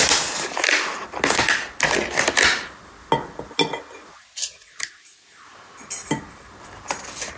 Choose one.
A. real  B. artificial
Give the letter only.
A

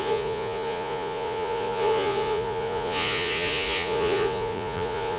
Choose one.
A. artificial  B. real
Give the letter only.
A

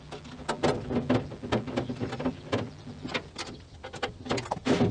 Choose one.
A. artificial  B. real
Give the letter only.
B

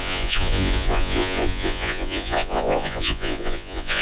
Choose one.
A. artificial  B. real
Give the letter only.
A